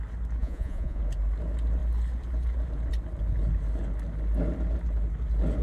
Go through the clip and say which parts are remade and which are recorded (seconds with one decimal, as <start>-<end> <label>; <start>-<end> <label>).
0.0-0.4 recorded; 0.4-1.0 remade; 1.0-5.6 recorded